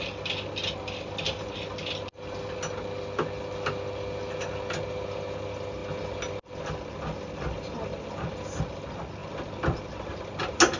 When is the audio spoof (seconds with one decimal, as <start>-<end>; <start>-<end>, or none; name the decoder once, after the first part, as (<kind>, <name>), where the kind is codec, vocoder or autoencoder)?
none